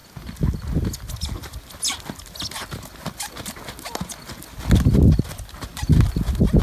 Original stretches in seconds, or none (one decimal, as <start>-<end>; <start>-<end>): 0.0-6.6